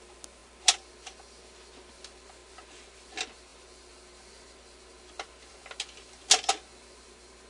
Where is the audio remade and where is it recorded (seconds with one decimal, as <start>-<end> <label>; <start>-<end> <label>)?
0.0-7.5 recorded